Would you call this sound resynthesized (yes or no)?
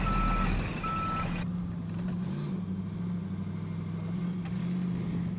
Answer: no